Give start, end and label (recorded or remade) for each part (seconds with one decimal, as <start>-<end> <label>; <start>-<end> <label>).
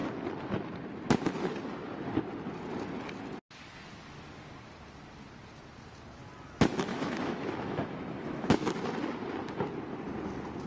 0.0-6.9 recorded; 6.9-8.8 remade; 8.8-10.7 recorded